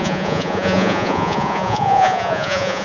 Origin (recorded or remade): remade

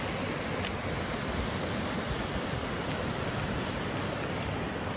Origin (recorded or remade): remade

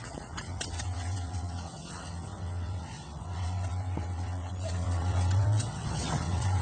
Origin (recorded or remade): remade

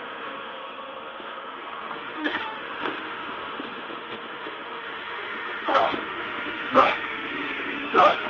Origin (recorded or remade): remade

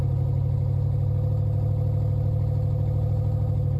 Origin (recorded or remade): recorded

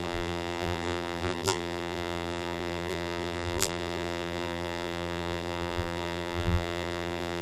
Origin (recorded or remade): remade